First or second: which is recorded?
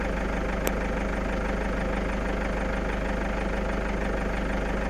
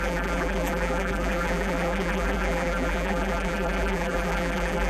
first